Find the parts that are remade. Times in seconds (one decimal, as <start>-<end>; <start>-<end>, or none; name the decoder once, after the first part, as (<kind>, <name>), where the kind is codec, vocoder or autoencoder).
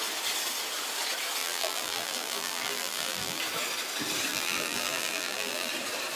1.4-3.4 (vocoder, BigVGAN v2); 4.3-5.7